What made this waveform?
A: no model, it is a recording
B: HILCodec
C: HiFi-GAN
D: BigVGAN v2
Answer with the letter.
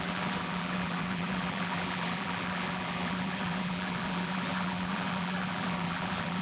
D